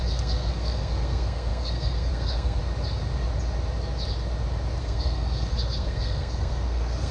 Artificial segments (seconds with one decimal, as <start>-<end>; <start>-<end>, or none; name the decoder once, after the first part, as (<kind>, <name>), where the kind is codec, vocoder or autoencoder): 0.0-2.6 (codec, SNAC); 4.8-7.1